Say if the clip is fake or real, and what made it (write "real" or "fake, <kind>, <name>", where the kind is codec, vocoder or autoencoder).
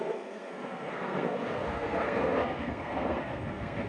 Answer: fake, codec, SNAC